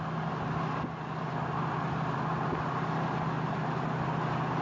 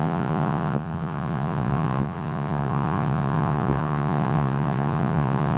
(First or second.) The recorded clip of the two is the first